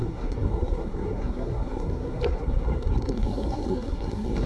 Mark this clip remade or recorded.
remade